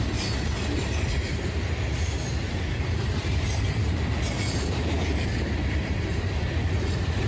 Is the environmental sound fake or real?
fake